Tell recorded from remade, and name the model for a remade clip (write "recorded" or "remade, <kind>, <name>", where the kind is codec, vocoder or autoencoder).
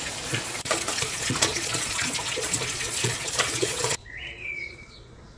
remade, vocoder, Vocos